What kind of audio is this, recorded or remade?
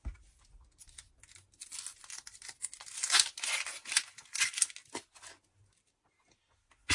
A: recorded